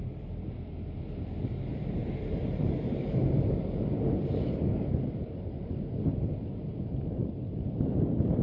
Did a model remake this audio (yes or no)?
yes